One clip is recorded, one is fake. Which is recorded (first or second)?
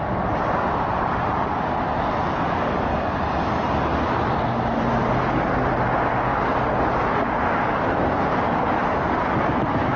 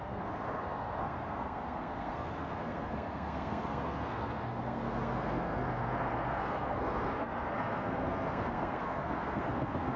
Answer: first